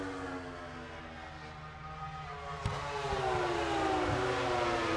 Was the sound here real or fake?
real